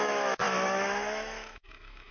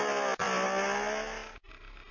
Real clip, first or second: second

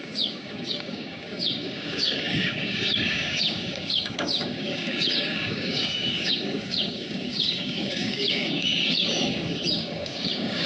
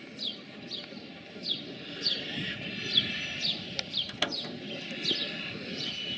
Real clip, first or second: second